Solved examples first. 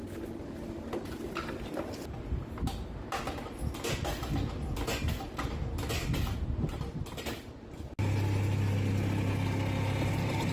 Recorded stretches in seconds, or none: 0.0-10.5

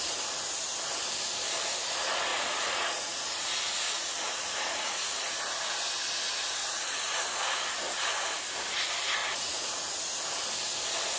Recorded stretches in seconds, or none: 0.0-2.3; 5.4-6.6; 8.0-9.2; 10.0-11.2

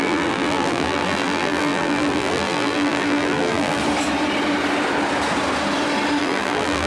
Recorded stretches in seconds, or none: 3.8-6.2

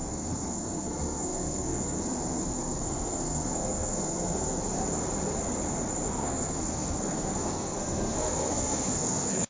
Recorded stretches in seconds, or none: 4.6-6.1

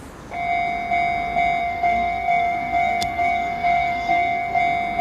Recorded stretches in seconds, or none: 0.0-1.6; 4.6-5.0